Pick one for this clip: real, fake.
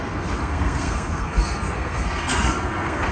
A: fake